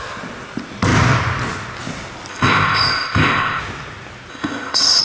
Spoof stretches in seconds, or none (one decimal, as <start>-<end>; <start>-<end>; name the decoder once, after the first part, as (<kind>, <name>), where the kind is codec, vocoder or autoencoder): 2.3-3.6 (codec, ZipCodec); 4.3-5.0